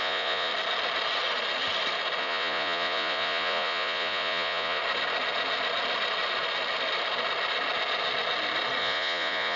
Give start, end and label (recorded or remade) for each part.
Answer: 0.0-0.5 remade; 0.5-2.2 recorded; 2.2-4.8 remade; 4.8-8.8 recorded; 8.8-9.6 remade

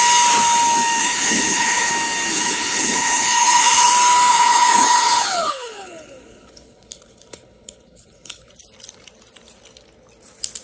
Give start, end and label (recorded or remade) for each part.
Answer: 0.0-1.0 recorded; 1.0-1.9 remade; 1.9-2.3 recorded; 2.3-3.9 remade; 3.9-4.3 recorded; 4.3-8.5 remade; 8.5-10.6 recorded

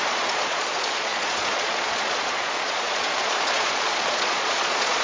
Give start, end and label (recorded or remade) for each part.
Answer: 0.0-5.0 remade

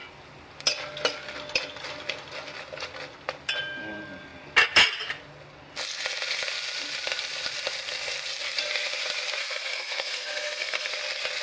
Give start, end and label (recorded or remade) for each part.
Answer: 0.0-9.4 recorded; 9.4-10.9 remade; 10.9-11.4 recorded

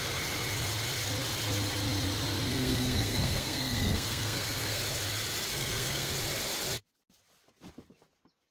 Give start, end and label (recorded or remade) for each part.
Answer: 0.0-2.5 recorded; 2.5-4.8 remade; 4.8-5.5 recorded; 5.5-6.1 remade; 6.1-8.5 recorded

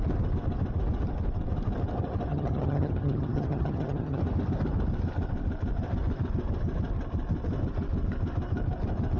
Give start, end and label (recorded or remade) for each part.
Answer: 0.0-2.3 recorded; 2.3-4.2 remade; 4.2-9.2 recorded